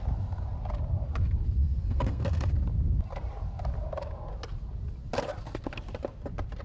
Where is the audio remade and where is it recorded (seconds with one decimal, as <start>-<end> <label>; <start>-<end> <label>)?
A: 0.0-1.6 recorded; 1.6-2.5 remade; 2.5-6.6 recorded